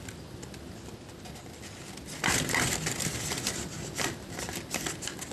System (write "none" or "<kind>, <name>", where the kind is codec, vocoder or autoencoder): none